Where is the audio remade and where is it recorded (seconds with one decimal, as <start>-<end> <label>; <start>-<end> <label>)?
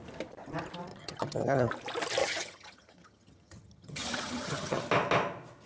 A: 0.0-0.9 recorded; 0.9-1.7 remade; 1.7-2.2 recorded; 2.2-4.8 remade; 4.8-5.7 recorded